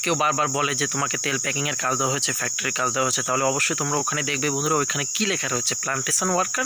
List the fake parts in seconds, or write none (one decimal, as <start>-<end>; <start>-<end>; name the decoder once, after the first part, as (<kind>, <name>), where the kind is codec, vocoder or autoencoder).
none